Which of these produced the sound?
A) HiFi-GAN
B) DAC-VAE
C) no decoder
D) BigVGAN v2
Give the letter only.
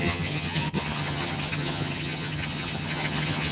A